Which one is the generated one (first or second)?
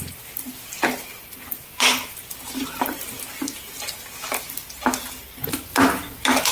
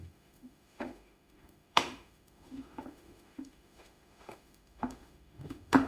second